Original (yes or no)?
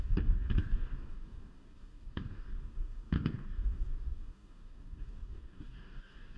no